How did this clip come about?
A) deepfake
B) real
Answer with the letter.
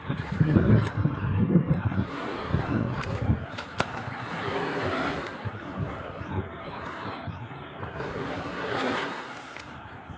A